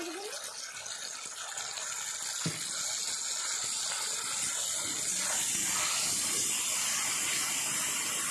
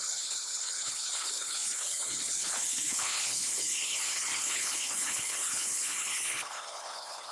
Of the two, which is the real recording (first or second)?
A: first